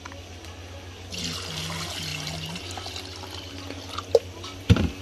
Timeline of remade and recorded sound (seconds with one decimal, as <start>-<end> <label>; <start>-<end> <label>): 0.0-5.0 recorded